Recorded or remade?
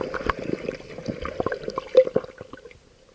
recorded